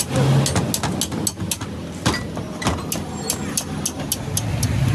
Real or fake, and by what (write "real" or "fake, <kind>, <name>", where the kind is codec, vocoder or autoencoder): real